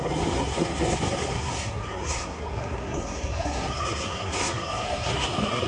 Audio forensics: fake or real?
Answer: fake